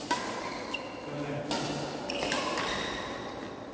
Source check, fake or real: real